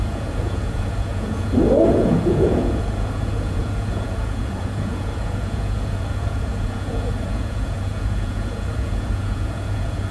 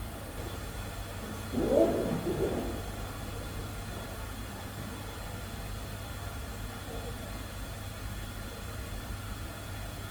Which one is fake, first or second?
first